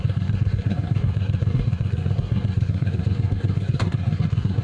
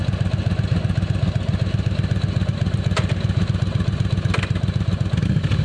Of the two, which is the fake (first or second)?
first